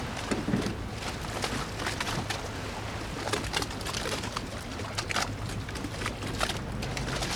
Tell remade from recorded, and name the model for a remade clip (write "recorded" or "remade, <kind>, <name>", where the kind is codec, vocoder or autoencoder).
recorded